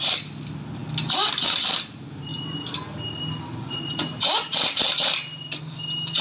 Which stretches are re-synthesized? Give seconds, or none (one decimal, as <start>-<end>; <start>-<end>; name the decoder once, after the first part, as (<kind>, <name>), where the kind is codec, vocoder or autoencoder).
none